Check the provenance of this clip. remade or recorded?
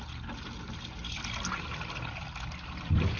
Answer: recorded